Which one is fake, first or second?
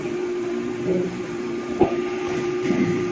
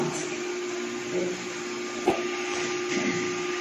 first